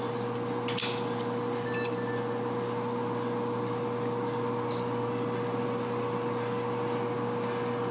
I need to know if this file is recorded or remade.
recorded